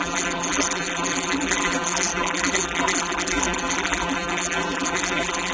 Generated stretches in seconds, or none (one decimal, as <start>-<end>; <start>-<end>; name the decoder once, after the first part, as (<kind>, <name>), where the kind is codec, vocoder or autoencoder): 0.0-5.5 (vocoder, BigVGAN v2)